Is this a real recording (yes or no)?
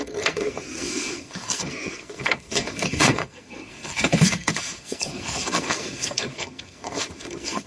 no